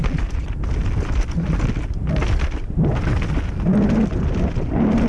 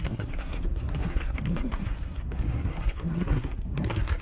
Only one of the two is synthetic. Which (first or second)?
second